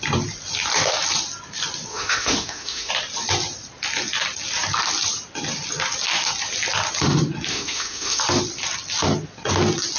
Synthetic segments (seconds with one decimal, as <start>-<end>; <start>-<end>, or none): 1.9-2.9; 7.5-8.2